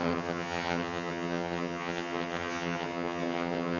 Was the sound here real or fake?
fake